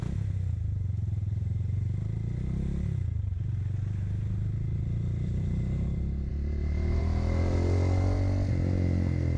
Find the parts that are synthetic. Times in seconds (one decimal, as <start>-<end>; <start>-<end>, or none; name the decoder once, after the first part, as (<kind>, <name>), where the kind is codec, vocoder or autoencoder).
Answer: none